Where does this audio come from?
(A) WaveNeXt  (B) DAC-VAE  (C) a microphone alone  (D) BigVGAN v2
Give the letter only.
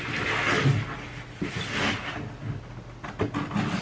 C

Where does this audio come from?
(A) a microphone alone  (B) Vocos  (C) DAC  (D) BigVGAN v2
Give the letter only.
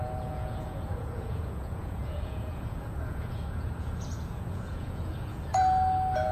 B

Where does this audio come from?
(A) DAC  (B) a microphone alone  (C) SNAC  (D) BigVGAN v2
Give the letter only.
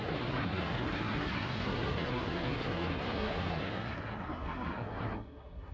C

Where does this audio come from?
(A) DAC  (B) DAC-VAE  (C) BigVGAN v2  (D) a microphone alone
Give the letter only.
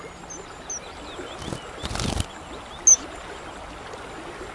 D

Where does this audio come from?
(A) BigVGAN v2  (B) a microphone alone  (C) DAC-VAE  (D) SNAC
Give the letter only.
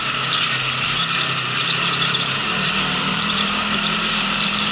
A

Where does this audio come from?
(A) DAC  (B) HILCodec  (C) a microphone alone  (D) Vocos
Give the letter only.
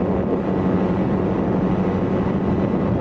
C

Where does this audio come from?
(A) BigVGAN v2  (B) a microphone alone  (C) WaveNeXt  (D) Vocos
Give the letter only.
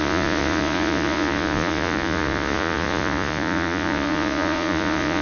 D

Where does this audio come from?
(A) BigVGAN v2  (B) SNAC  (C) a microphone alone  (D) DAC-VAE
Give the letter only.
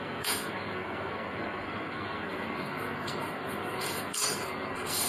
B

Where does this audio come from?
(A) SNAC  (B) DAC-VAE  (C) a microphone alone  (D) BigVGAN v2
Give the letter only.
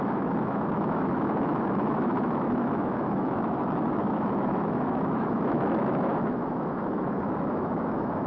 B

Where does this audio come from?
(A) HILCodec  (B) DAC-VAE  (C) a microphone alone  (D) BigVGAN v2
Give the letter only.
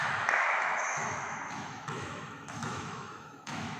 B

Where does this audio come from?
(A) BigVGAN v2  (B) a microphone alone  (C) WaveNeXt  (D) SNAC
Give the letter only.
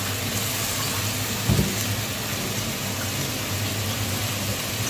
B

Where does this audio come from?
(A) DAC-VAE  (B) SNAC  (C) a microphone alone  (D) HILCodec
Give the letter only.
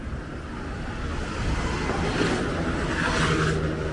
C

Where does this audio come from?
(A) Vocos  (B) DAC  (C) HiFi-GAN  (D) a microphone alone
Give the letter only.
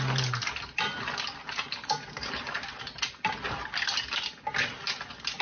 D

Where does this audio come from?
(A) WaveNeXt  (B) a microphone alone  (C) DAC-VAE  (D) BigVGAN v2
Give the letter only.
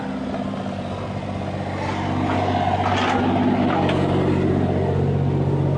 B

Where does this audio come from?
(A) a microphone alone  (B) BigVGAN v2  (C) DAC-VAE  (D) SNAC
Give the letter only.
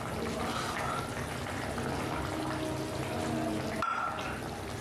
A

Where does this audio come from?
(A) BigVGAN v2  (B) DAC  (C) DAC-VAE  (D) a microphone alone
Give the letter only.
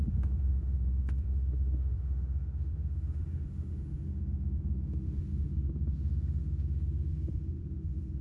C